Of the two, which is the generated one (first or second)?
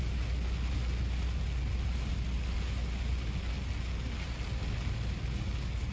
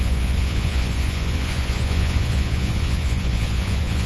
second